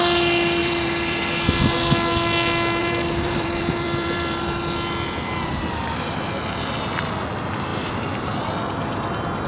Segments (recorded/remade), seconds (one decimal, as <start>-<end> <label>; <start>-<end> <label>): 0.0-0.6 recorded; 0.6-1.2 remade; 1.2-2.8 recorded; 2.8-4.4 remade; 4.4-7.7 recorded; 7.7-8.3 remade; 8.3-9.5 recorded